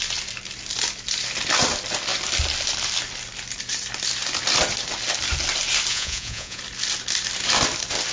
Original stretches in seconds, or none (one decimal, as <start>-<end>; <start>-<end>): 0.0-5.9; 6.6-8.1